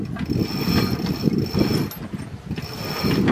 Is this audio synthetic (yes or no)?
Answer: no